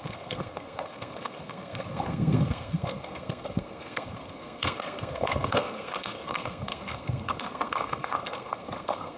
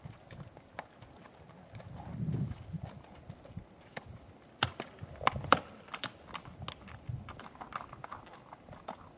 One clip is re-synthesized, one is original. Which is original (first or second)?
second